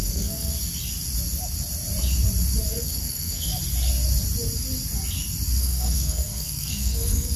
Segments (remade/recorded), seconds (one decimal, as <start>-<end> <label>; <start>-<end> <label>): 0.0-0.5 remade; 0.5-2.7 recorded; 2.7-3.5 remade; 3.5-5.6 recorded; 5.6-7.4 remade